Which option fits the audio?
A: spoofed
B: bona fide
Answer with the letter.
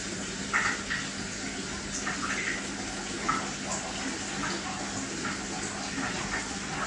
B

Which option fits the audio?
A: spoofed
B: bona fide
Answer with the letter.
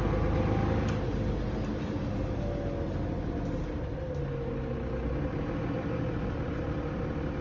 B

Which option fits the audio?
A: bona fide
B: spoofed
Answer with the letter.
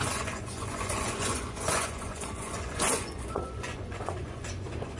B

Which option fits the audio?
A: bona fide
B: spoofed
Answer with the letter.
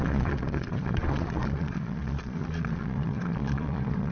B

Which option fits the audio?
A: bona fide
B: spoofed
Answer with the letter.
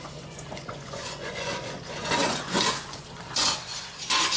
B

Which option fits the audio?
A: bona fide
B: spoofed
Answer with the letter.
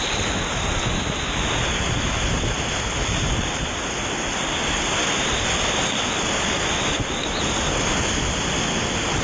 A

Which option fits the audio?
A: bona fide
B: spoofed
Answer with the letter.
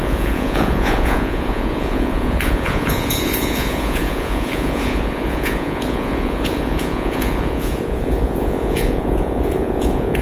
B